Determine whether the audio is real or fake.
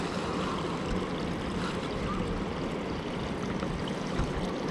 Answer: real